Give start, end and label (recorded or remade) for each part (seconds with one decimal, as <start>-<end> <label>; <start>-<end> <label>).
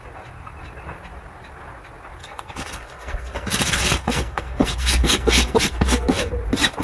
0.0-2.2 recorded; 2.2-6.3 remade; 6.3-6.8 recorded